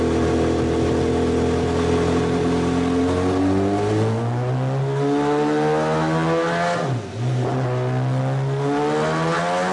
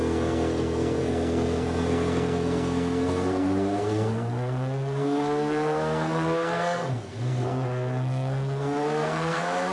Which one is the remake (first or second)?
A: second